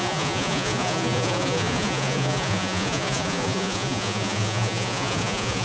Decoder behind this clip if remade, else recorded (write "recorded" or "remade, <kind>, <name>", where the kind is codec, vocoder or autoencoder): remade, vocoder, Vocos